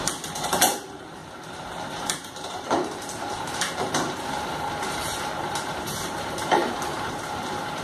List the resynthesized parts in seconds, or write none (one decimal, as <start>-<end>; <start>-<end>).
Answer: 0.0-7.8